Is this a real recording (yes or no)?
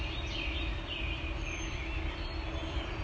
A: yes